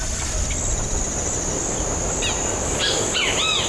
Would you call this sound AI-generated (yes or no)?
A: no